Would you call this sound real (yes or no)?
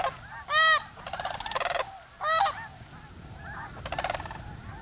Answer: yes